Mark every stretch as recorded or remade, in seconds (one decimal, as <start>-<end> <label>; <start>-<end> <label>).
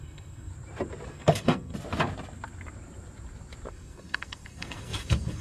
0.0-0.5 remade; 0.5-1.1 recorded; 1.1-1.7 remade; 1.7-3.7 recorded; 3.7-5.4 remade